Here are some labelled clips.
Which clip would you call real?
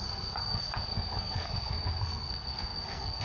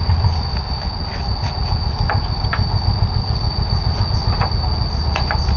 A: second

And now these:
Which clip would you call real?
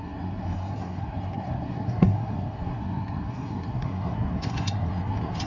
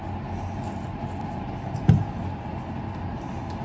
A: second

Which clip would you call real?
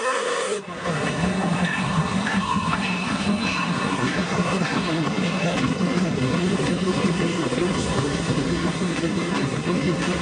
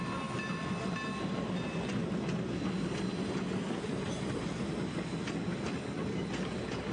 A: second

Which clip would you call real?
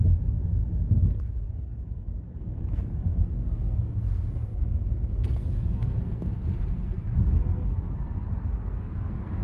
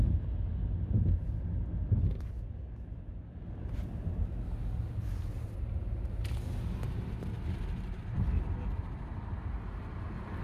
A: second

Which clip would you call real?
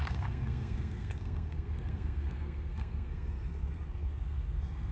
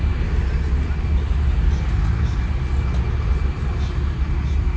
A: second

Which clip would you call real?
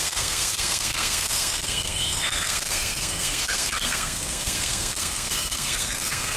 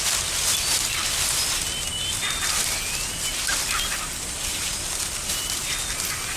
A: second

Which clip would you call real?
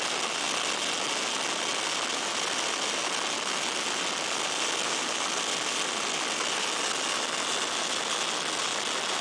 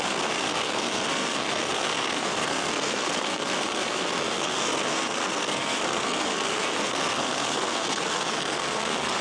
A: first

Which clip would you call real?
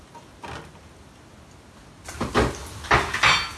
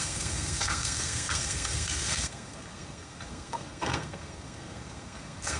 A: first